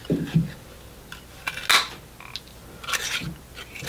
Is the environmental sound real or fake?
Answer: real